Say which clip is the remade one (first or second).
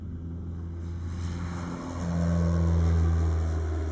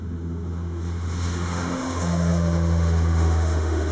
second